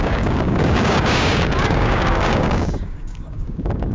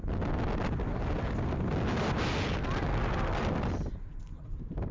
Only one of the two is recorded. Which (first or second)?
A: second